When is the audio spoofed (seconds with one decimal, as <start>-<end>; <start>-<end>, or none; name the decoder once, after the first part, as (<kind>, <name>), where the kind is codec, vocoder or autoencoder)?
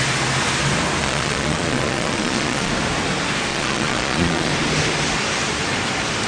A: 1.0-2.7 (vocoder, Vocos); 3.5-4.5